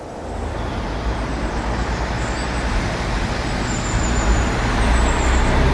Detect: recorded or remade recorded